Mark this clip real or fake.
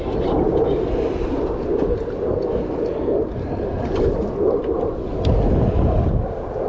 real